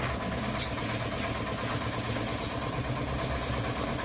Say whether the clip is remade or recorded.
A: recorded